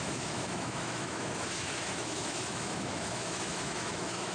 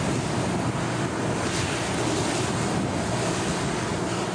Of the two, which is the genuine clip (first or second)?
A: second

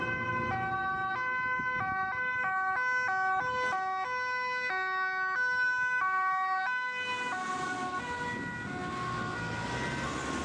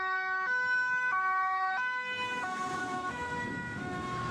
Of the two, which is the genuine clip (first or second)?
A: first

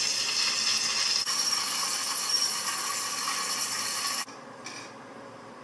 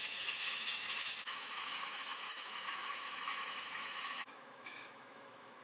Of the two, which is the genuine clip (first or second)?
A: first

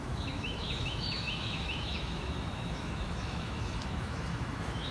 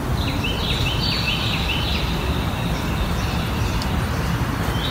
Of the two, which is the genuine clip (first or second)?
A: second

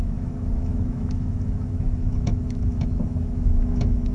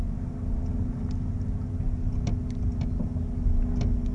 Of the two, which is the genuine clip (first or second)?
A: second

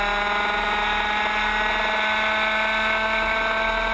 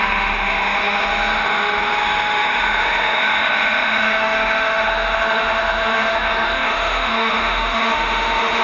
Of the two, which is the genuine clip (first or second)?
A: first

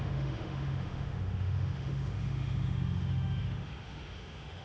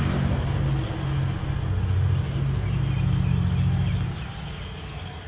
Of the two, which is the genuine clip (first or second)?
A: second